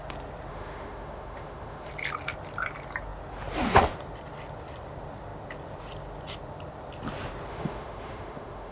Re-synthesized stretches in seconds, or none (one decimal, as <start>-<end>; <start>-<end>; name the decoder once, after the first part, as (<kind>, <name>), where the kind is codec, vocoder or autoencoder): 0.5-1.9 (autoencoder, DAC-VAE); 7.5-8.7